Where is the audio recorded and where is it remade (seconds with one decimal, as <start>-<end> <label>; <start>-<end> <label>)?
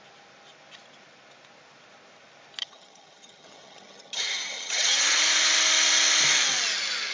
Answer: 0.0-2.6 recorded; 2.6-5.2 remade; 5.2-7.1 recorded